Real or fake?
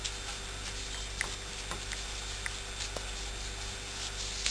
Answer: real